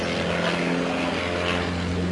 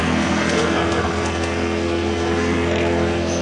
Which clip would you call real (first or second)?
first